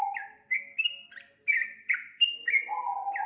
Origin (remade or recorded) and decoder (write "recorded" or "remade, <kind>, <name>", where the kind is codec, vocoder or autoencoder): recorded